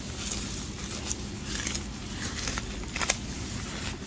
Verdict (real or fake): real